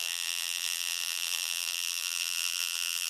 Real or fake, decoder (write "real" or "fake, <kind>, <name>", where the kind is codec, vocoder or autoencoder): fake, vocoder, BigVGAN v2